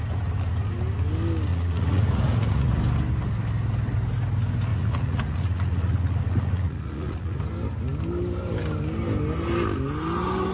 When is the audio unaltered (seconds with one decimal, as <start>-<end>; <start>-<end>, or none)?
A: 0.0-1.5; 2.8-4.7; 7.4-10.5